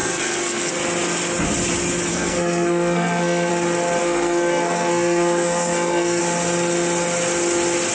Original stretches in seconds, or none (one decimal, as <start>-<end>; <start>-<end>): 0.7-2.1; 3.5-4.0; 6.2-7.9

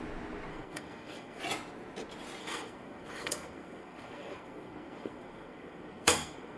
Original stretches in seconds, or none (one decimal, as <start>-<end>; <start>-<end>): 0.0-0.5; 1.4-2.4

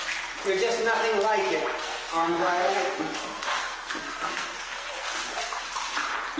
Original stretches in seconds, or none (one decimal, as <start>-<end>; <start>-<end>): 0.0-1.8; 5.6-6.4

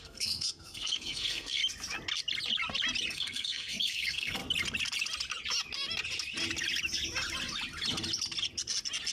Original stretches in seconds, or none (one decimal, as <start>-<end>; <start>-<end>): 1.6-3.1; 4.4-9.1

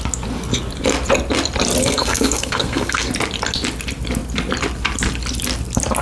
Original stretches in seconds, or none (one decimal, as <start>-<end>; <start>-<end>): 0.0-1.8; 3.1-6.0

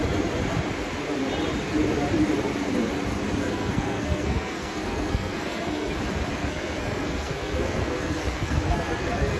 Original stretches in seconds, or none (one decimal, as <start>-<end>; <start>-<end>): 0.0-3.4; 6.0-6.4

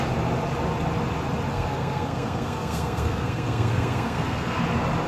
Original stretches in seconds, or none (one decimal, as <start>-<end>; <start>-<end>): 0.0-1.5; 4.6-5.1